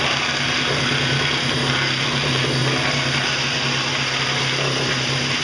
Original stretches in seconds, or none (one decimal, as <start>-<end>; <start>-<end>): 0.0-5.4